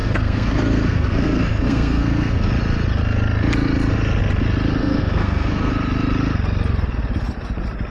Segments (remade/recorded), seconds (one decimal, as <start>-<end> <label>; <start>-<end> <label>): 0.0-2.5 remade; 2.5-4.8 recorded; 4.8-5.7 remade; 5.7-7.9 recorded